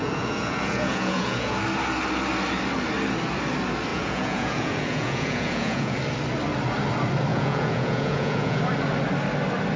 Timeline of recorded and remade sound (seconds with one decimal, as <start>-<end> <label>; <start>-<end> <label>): 0.0-1.6 remade; 1.6-3.9 recorded; 3.9-6.0 remade; 6.0-7.3 recorded; 7.3-8.6 remade; 8.6-9.8 recorded